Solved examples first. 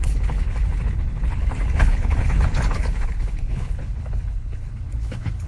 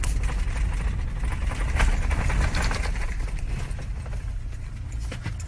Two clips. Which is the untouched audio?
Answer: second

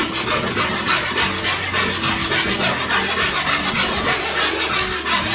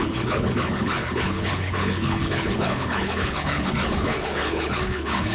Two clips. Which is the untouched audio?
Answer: first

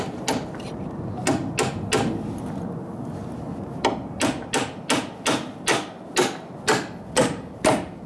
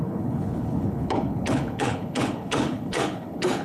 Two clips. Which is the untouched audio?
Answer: first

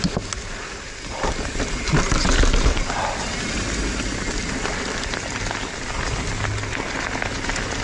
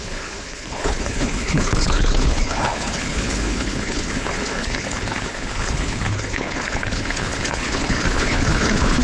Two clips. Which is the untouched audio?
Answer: first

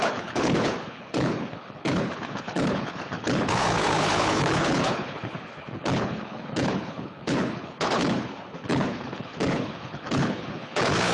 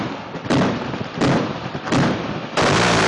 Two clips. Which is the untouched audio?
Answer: second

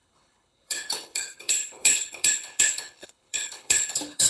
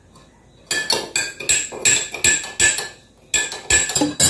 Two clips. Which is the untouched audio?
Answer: second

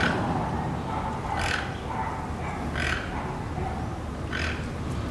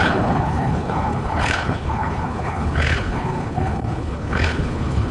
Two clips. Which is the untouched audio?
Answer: first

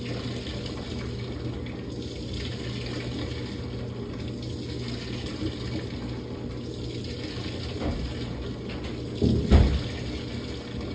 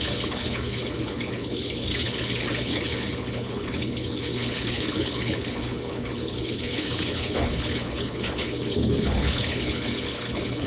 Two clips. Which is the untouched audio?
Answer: first